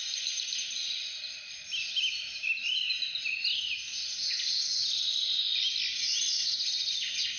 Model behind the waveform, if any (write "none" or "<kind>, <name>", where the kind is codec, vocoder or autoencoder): none